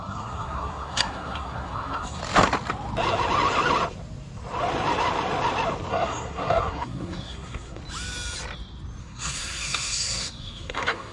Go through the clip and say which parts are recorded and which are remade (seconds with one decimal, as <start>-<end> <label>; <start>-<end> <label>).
0.0-2.2 remade; 2.2-5.9 recorded; 5.9-7.8 remade; 7.8-9.0 recorded; 9.0-11.1 remade